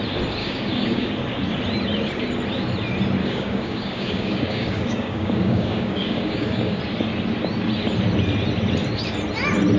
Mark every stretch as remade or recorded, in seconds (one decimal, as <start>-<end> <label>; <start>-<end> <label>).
0.0-0.4 recorded; 0.4-1.1 remade; 1.1-3.2 recorded; 3.2-6.8 remade; 6.8-9.8 recorded